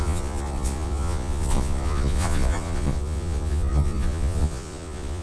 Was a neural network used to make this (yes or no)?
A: yes